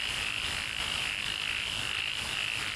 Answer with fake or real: real